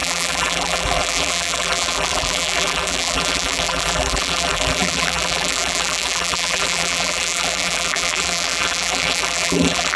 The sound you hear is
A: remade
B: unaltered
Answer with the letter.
A